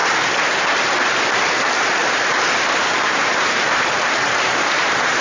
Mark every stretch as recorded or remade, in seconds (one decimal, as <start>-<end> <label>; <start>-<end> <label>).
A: 0.0-2.0 recorded; 2.0-5.2 remade